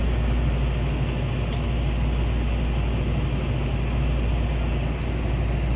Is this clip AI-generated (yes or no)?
no